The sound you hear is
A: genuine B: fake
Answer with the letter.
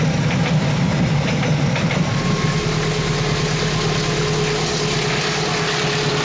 A